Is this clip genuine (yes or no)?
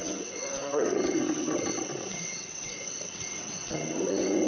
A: no